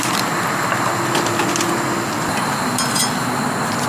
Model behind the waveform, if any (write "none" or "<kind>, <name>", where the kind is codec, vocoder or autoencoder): none